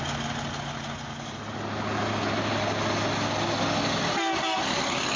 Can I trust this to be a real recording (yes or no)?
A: yes